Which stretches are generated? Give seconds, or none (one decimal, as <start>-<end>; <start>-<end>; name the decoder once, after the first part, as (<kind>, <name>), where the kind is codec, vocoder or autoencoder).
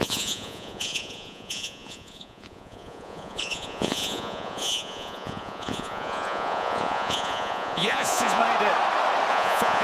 0.0-8.4 (vocoder, Vocos); 9.3-9.8